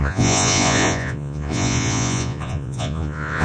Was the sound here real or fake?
fake